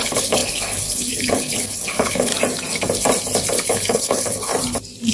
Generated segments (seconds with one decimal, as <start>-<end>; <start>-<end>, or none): 0.0-2.3; 3.7-4.5